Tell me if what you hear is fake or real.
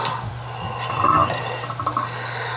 real